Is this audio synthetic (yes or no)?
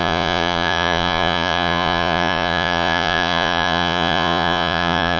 yes